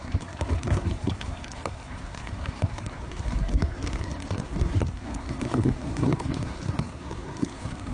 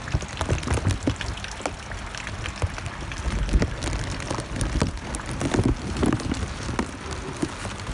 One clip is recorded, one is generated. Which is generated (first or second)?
first